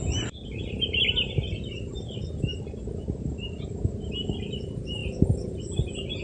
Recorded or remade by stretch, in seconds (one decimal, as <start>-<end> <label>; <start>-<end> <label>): 0.0-6.2 recorded